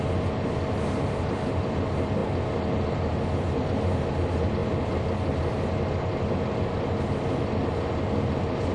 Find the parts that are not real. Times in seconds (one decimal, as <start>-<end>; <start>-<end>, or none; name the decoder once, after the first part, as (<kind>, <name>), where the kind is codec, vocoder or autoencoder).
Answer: none